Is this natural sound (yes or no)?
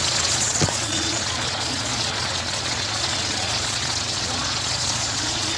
no